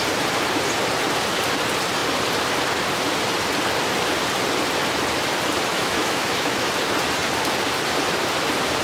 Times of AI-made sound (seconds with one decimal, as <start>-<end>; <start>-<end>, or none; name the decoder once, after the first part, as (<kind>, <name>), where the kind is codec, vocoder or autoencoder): 5.7-6.7 (autoencoder, DAC-VAE)